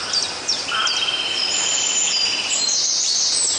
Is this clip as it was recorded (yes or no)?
yes